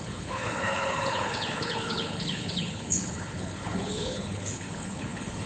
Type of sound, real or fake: fake